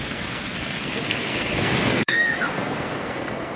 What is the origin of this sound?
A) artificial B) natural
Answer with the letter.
A